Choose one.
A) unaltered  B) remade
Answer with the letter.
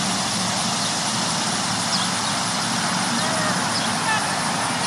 A